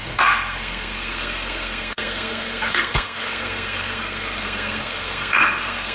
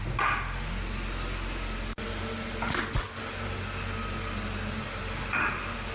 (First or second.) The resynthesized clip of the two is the first